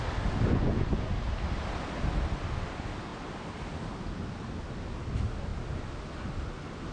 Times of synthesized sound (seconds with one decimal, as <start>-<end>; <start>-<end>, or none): 0.5-1.1